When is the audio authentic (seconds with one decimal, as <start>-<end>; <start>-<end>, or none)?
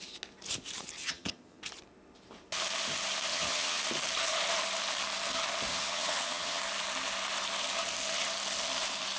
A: 0.0-1.0; 1.6-3.3; 3.8-5.7; 6.6-9.2